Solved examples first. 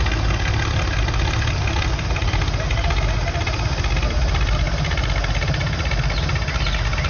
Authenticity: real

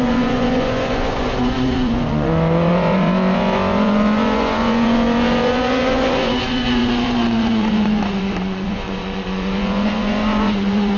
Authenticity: fake